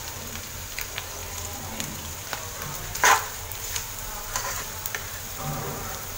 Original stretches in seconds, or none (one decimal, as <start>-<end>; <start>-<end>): 1.2-1.9